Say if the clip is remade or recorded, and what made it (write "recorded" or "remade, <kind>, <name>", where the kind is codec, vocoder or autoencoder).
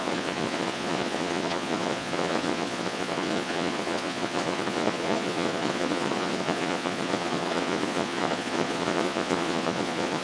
remade, vocoder, Vocos